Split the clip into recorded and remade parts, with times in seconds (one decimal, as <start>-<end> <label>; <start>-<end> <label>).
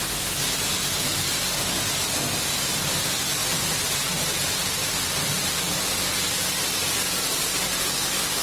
0.0-3.4 recorded; 3.4-4.9 remade; 4.9-8.4 recorded